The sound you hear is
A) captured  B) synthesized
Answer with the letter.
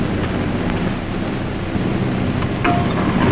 A